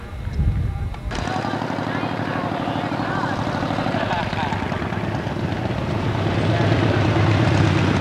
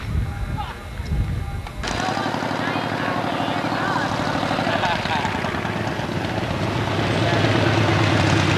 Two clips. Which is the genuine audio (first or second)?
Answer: second